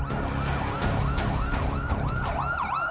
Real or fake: real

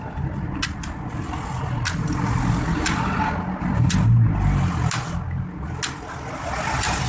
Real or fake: real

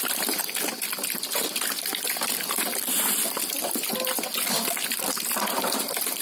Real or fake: real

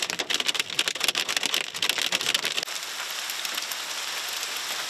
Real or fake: real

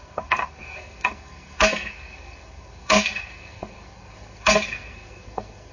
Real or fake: fake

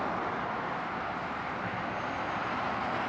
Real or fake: real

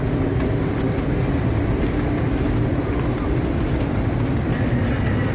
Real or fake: real